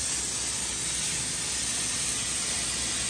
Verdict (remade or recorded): recorded